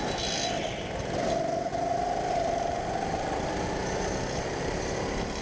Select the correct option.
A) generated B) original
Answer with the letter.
B